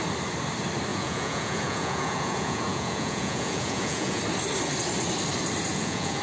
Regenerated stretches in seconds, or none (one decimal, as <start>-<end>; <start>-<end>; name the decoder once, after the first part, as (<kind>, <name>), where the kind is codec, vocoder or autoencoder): 0.9-4.2 (vocoder, Vocos); 5.7-6.2